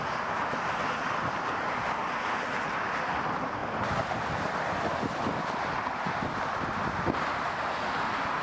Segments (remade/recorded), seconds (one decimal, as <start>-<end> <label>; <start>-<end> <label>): 0.0-3.6 recorded; 3.6-5.8 remade; 5.8-8.4 recorded